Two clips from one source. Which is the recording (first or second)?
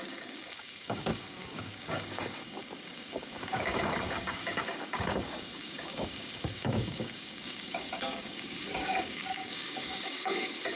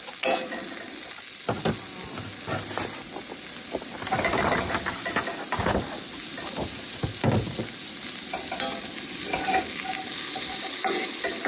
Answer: second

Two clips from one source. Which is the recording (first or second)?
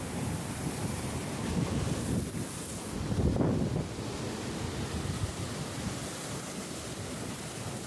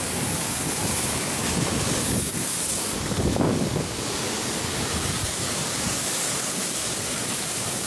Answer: first